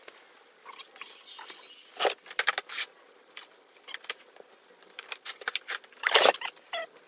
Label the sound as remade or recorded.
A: recorded